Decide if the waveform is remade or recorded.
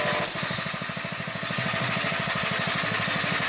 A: recorded